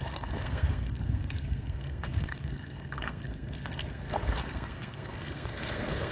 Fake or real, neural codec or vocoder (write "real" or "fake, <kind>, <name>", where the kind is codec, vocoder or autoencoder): fake, codec, SNAC